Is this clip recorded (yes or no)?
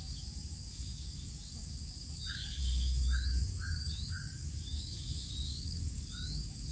no